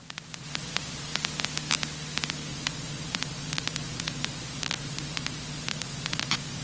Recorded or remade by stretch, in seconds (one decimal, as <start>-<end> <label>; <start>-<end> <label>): 0.0-1.1 remade; 1.1-2.5 recorded; 2.5-6.6 remade